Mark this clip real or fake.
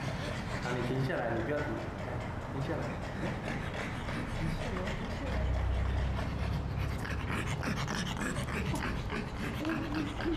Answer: real